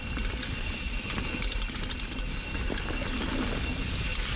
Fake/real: real